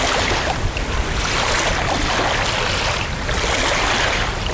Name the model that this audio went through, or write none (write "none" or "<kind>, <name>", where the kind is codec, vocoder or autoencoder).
none